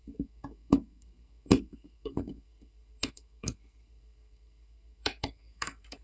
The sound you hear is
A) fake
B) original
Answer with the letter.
A